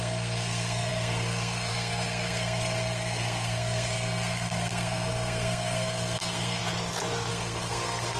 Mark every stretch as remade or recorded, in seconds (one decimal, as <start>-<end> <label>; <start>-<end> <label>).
0.0-6.6 remade; 6.6-7.3 recorded; 7.3-8.2 remade